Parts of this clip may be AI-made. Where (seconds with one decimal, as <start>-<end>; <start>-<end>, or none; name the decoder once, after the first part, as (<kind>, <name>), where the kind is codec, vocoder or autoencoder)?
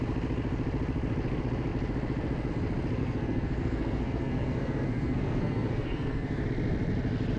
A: 3.0-6.5 (codec, SNAC)